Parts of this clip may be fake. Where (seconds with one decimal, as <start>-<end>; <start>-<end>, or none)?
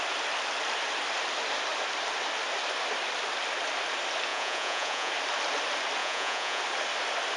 4.3-5.1; 6.0-6.6